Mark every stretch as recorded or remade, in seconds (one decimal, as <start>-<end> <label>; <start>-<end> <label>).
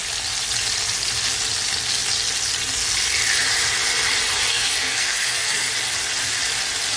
0.0-4.5 recorded; 4.5-5.7 remade; 5.7-7.0 recorded